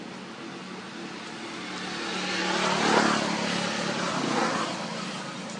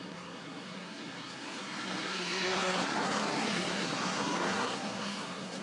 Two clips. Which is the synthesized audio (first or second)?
second